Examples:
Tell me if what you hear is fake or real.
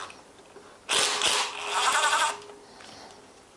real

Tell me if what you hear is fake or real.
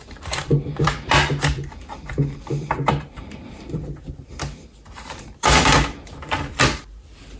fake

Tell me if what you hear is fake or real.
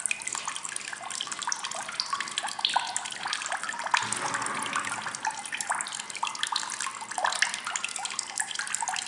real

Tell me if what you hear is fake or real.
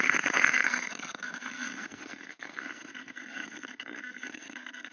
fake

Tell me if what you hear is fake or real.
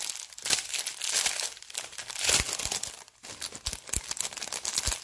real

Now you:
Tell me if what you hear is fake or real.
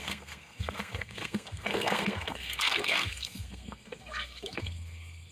fake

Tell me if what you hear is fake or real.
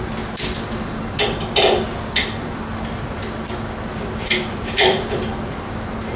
real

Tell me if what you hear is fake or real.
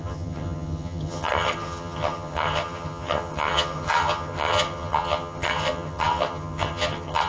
fake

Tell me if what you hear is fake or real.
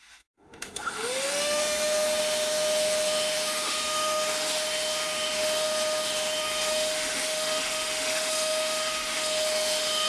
fake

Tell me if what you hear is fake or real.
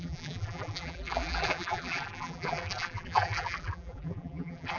fake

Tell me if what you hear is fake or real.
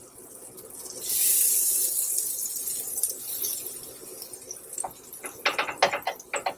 real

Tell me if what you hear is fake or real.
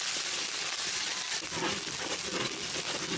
real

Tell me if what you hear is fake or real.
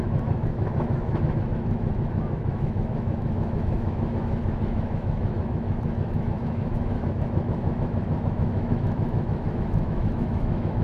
fake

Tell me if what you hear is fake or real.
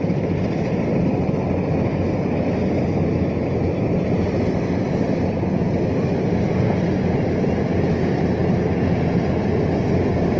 real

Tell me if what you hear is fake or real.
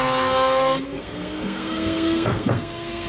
fake